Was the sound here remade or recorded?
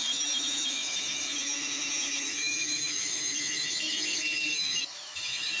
remade